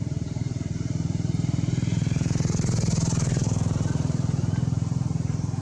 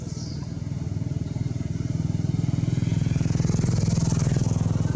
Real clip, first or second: second